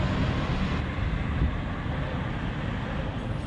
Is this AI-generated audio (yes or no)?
yes